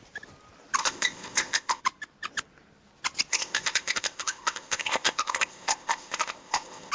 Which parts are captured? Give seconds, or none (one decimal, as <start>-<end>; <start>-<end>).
0.0-0.8; 1.8-3.3